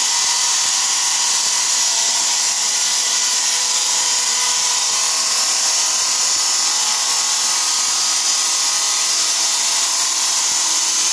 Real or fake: real